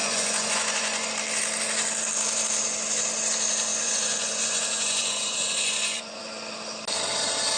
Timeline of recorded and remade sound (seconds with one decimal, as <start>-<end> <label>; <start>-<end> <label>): 0.0-1.1 remade; 1.1-3.7 recorded; 3.7-6.2 remade; 6.2-7.6 recorded